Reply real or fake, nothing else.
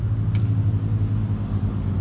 real